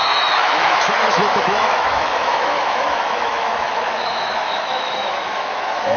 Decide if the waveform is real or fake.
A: fake